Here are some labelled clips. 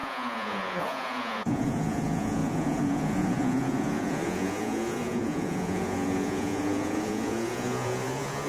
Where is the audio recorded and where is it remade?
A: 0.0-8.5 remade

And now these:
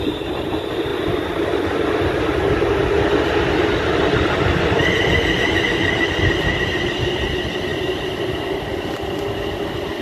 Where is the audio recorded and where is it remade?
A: 0.0-10.0 recorded

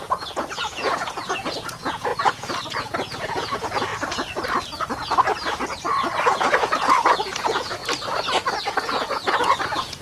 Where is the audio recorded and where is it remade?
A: 0.0-3.9 remade; 3.9-6.2 recorded; 6.2-7.8 remade; 7.8-8.6 recorded; 8.6-10.0 remade

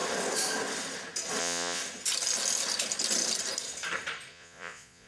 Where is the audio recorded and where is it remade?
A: 0.0-1.4 recorded; 1.4-1.8 remade; 1.8-4.3 recorded; 4.3-5.1 remade

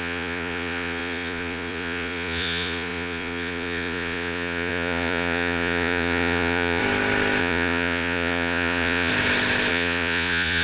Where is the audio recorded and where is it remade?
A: 0.0-6.8 remade; 6.8-7.4 recorded; 7.4-9.1 remade; 9.1-9.7 recorded; 9.7-10.6 remade